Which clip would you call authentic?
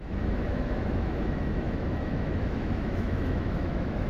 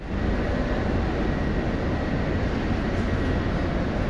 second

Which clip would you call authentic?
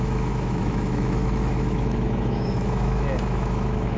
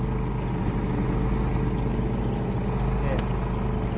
second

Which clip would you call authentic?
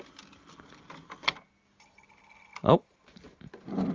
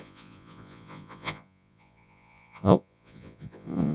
first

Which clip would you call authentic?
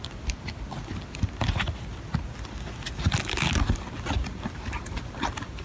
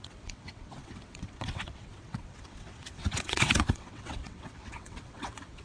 first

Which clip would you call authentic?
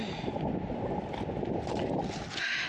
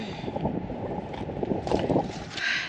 first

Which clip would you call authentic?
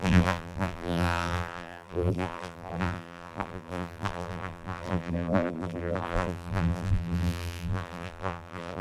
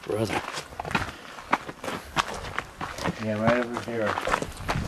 second